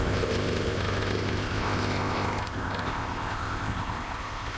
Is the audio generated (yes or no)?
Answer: yes